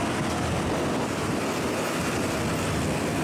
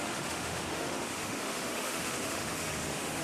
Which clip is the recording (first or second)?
first